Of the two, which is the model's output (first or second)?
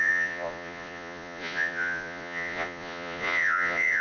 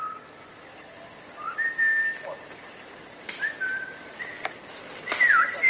first